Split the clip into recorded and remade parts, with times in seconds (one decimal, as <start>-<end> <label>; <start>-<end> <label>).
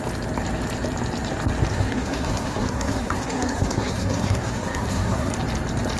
0.0-1.7 recorded; 1.7-5.3 remade; 5.3-6.0 recorded